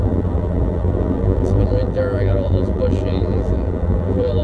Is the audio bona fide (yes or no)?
no